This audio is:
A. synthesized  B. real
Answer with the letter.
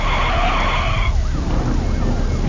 B